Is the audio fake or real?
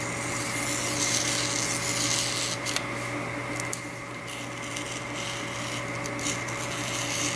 real